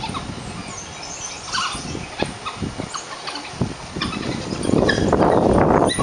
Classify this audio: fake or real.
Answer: real